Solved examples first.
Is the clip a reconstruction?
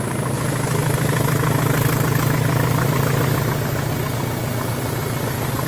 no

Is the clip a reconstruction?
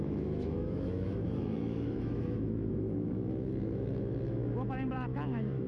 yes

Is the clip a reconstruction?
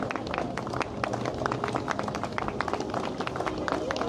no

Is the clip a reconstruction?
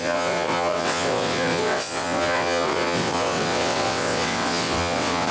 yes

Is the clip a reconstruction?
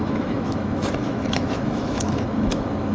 yes